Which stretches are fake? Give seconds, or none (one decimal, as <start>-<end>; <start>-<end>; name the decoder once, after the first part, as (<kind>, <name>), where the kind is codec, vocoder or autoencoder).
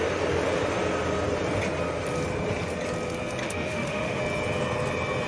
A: 3.4-4.2 (autoencoder, DAC-VAE)